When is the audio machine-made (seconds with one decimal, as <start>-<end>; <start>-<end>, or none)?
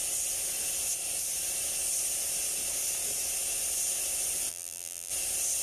4.5-5.1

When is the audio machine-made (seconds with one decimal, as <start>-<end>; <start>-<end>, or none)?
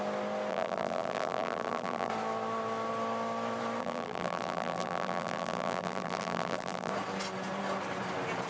0.5-2.1; 3.8-6.9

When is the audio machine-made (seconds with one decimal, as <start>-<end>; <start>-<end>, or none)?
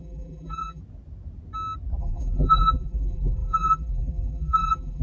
0.0-0.8; 2.0-5.0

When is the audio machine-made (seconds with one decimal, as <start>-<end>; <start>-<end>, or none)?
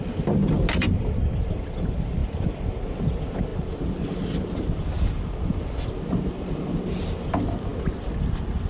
none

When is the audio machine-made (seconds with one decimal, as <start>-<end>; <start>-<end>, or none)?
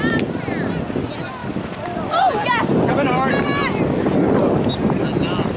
1.4-4.1